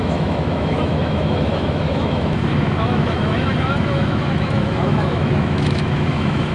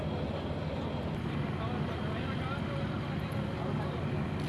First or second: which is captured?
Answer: second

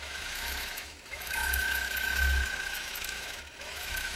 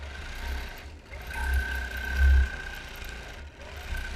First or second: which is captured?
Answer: second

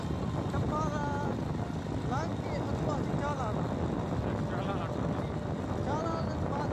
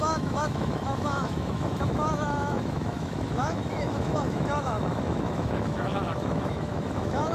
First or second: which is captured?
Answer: first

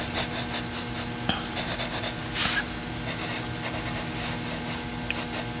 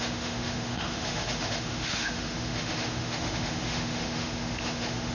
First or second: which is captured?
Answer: first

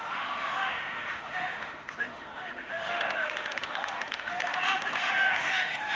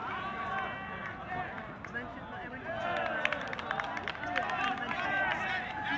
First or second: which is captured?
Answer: second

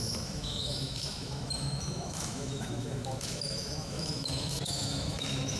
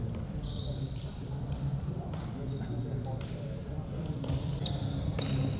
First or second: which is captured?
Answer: second